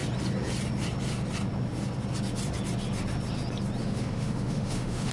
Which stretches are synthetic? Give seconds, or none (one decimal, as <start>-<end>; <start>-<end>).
3.8-5.1